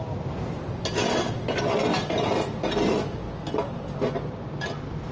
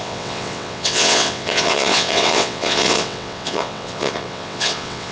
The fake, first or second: second